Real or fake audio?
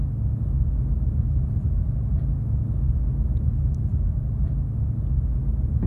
real